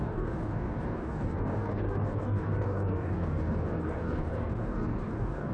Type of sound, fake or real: fake